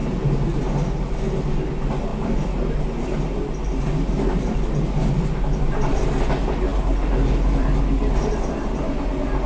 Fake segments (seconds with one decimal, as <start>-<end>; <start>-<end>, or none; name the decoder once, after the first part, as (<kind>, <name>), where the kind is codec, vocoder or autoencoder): none